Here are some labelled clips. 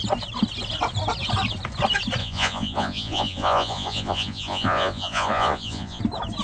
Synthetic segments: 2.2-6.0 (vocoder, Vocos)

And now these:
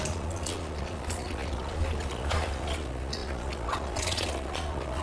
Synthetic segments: 0.0-5.0 (vocoder, Vocos)

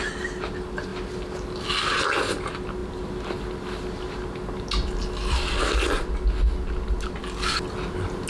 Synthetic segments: none

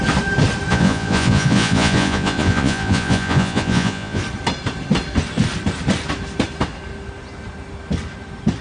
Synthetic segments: 0.7-4.2 (vocoder, Vocos)

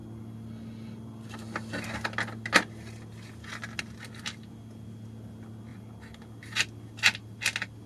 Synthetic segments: none

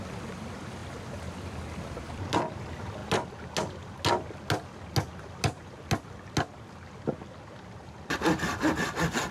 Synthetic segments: none

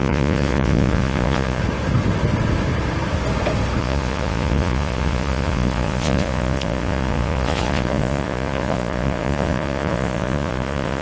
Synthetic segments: 0.0-1.6 (vocoder, Vocos); 3.8-11.0

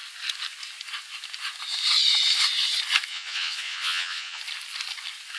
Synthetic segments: 3.1-4.4 (vocoder, Vocos)